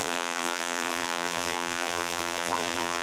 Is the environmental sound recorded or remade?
remade